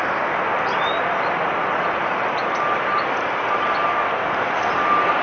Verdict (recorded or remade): recorded